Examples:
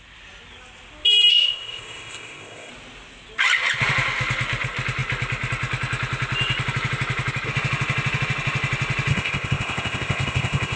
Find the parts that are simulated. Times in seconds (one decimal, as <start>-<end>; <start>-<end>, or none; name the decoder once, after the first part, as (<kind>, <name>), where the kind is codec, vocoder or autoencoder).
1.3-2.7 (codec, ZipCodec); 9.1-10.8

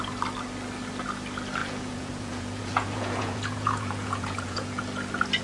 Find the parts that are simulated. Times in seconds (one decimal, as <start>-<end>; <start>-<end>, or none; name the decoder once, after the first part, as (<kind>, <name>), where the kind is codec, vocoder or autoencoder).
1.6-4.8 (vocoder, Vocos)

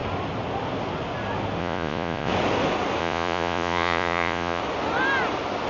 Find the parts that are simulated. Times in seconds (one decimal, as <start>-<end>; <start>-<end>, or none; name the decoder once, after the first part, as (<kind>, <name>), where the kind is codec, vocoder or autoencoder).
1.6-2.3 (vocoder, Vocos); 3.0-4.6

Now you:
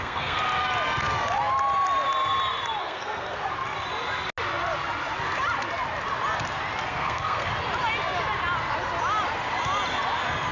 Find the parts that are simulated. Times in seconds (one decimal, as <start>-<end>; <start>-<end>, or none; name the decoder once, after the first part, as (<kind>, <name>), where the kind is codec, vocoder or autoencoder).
0.0-0.5 (codec, SNAC); 2.8-3.5; 6.9-7.5